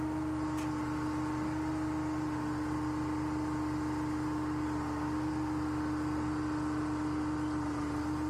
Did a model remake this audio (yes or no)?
no